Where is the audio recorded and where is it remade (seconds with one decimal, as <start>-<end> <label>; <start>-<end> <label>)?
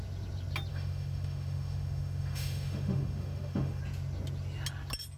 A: 0.0-0.7 recorded; 0.7-3.8 remade; 3.8-5.2 recorded